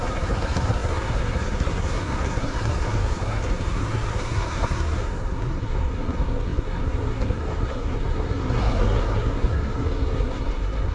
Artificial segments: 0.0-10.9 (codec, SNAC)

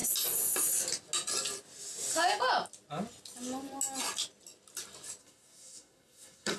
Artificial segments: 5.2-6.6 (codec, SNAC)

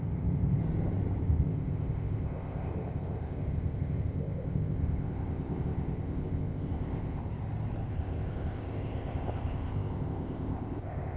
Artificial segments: 0.0-0.6 (codec, ZipCodec); 1.2-7.2; 7.9-11.2